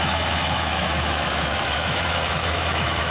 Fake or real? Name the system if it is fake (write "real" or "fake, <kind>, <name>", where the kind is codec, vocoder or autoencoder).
fake, autoencoder, DAC-VAE